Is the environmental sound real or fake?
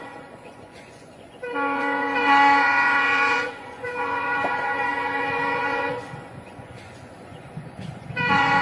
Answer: fake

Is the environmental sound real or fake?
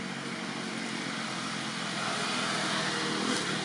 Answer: real